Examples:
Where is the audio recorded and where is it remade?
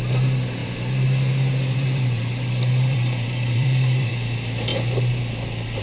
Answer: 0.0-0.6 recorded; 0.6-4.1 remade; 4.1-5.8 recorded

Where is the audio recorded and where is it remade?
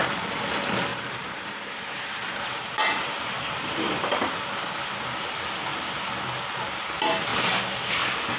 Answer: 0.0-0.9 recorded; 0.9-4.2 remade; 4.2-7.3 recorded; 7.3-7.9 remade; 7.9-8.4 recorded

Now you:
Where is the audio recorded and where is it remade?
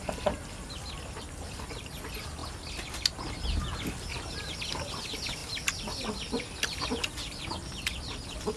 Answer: 0.0-2.4 remade; 2.4-4.9 recorded; 4.9-5.4 remade; 5.4-6.8 recorded; 6.8-8.6 remade